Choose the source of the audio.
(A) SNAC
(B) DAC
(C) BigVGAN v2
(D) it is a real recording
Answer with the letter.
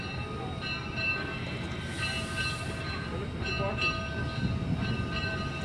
D